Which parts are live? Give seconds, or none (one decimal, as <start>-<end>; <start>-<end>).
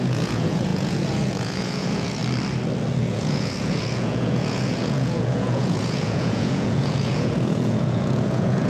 2.2-3.0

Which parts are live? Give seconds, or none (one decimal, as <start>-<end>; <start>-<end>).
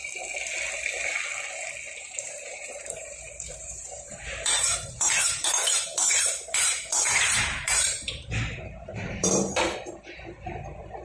0.0-2.0